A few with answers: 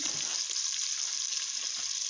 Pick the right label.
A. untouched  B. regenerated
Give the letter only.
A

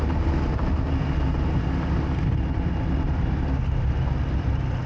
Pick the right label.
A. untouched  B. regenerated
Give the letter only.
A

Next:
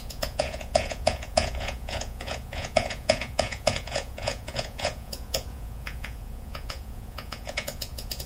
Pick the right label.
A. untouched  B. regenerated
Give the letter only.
B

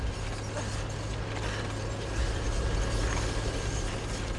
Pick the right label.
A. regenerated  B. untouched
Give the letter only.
B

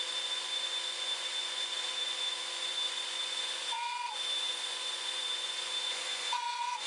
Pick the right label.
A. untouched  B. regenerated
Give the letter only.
B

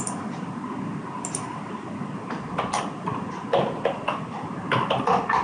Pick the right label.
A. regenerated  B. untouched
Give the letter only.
B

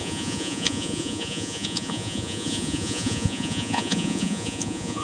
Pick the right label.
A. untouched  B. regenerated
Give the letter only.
B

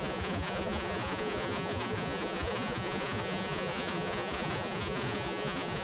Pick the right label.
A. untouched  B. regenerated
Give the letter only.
B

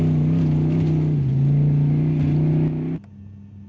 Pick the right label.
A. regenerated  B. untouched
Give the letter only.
B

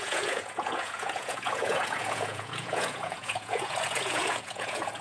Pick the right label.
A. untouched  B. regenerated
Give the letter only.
B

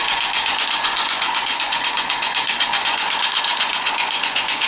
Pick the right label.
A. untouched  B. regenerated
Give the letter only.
B